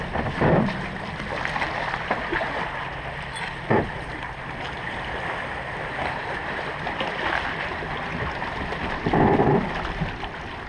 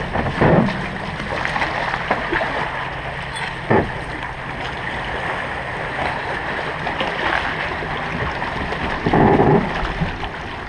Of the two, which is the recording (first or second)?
second